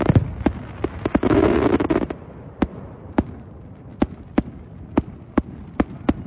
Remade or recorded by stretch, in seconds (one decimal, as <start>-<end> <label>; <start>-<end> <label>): 0.0-6.3 recorded

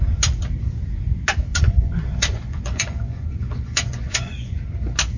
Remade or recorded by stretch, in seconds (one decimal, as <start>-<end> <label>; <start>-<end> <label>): 0.0-1.5 recorded; 1.5-4.6 remade; 4.6-5.2 recorded

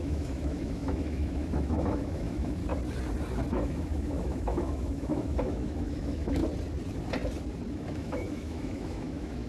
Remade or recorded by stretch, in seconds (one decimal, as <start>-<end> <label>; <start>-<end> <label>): 0.0-2.6 remade; 2.6-3.5 recorded; 3.5-6.4 remade; 6.4-7.7 recorded; 7.7-9.5 remade

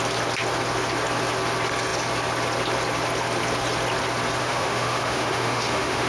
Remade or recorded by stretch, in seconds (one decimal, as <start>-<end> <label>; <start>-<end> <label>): 0.0-4.4 recorded; 4.4-6.1 remade

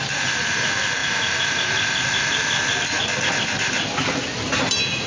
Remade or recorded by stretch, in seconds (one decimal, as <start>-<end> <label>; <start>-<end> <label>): 0.0-5.1 recorded

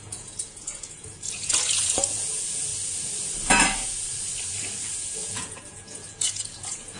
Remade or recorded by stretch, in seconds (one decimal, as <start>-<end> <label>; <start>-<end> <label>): 0.0-2.7 remade; 2.7-4.8 recorded; 4.8-7.0 remade

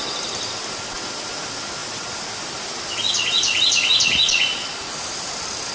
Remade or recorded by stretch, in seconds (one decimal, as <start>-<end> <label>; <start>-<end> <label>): 0.0-5.7 recorded

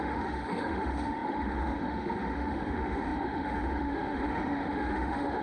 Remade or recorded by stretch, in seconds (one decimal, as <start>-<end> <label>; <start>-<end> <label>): 0.0-5.4 remade